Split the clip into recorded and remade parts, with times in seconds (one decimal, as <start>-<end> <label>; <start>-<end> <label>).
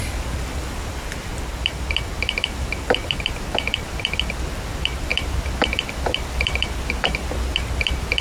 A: 0.0-8.2 remade